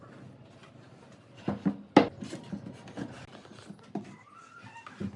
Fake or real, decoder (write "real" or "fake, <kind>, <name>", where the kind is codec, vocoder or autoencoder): real